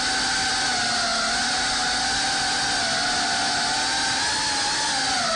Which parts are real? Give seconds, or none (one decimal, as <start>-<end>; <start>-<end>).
0.0-5.4